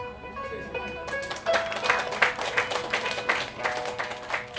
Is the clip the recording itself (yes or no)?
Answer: yes